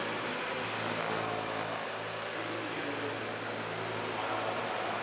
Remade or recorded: recorded